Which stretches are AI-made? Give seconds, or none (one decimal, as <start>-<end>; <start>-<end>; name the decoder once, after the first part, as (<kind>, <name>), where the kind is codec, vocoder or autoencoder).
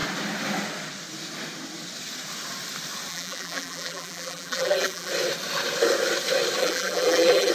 3.1-5.1 (vocoder, BigVGAN v2); 6.6-7.5